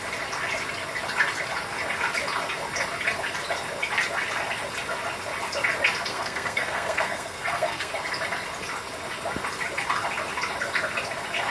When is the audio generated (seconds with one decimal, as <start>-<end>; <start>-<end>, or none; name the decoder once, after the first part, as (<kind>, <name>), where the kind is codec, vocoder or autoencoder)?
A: 6.1-7.9 (codec, SNAC)